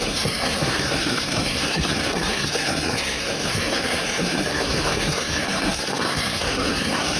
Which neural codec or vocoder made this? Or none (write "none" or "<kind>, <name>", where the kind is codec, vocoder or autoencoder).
codec, SNAC